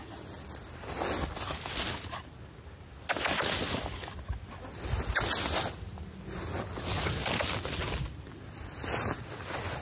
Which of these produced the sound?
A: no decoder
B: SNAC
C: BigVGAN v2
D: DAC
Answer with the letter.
A